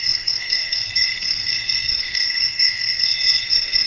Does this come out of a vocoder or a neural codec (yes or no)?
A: yes